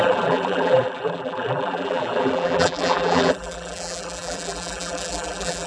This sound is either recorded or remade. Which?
remade